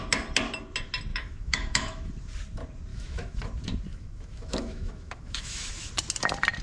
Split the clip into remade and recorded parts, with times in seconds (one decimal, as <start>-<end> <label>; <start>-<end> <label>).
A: 0.0-1.1 recorded; 1.1-2.1 remade; 2.1-2.9 recorded; 2.9-3.4 remade; 3.4-3.9 recorded; 3.9-5.9 remade; 5.9-6.6 recorded